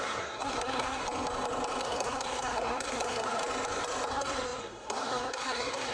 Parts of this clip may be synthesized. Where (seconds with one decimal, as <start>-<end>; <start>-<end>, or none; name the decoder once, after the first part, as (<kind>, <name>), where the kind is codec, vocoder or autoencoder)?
0.0-1.0 (codec, SNAC); 1.8-3.4; 4.1-5.9